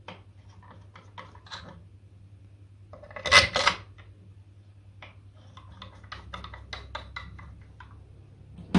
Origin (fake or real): real